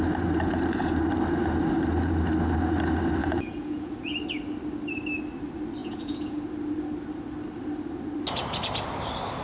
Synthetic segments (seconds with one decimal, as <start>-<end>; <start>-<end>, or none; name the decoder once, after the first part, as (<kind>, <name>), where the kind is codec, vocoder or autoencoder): 3.2-4.1 (vocoder, Vocos); 5.8-6.4